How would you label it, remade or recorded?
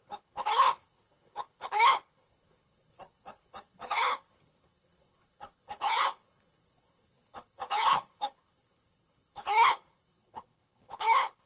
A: remade